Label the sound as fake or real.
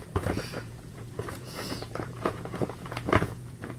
fake